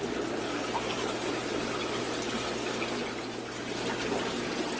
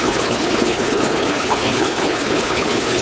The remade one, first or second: second